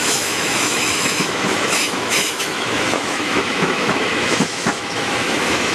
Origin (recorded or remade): remade